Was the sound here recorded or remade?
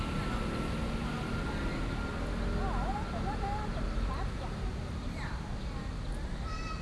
recorded